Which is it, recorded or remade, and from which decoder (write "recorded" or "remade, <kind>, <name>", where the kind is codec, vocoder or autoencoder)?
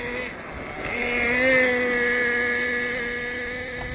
recorded